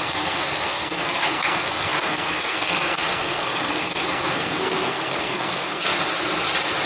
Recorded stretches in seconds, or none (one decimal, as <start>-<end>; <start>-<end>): 5.9-6.9